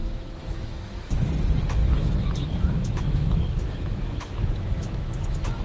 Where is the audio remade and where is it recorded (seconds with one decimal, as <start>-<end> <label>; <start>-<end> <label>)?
0.0-1.3 remade; 1.3-1.8 recorded; 1.8-5.6 remade